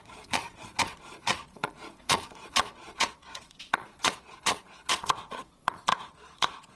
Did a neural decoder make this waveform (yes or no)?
yes